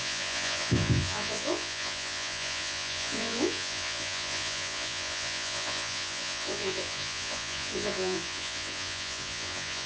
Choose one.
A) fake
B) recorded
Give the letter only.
A